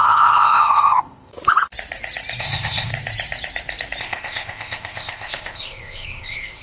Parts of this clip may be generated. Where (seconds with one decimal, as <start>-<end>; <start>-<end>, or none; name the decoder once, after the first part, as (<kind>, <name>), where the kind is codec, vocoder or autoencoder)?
0.0-1.3 (codec, ZipCodec); 2.4-2.9; 4.0-6.6

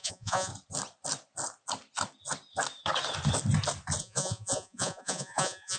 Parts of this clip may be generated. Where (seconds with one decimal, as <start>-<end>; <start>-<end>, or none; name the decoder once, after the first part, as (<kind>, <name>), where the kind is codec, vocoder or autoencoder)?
0.0-0.5 (vocoder, Vocos); 4.0-5.8

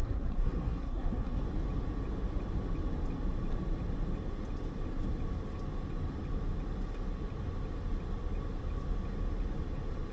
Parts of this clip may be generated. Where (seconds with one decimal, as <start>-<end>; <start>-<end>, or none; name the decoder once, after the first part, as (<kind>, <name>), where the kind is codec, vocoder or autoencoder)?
0.0-1.4 (codec, SNAC)

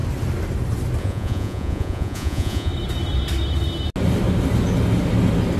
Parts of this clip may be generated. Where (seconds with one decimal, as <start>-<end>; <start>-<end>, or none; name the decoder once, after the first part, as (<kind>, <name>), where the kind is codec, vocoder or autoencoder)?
1.0-2.7 (vocoder, Vocos)

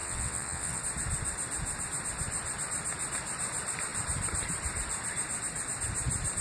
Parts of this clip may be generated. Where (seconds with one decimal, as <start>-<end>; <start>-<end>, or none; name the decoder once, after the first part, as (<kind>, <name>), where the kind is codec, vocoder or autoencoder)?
0.0-0.8 (vocoder, WaveNeXt)

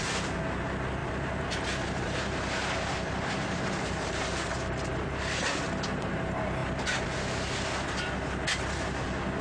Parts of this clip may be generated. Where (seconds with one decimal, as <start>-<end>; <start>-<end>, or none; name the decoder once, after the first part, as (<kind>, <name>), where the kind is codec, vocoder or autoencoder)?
1.0-5.6 (vocoder, BigVGAN v2)